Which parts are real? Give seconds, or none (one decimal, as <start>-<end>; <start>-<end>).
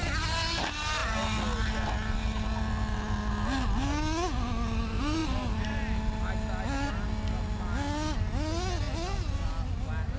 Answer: 0.0-10.2